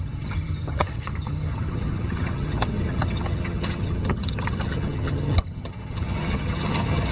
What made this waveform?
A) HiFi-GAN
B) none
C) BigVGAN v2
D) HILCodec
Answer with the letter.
A